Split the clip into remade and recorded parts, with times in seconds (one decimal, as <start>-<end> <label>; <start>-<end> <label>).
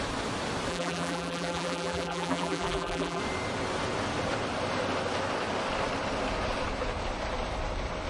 0.0-0.7 recorded; 0.7-3.2 remade; 3.2-8.1 recorded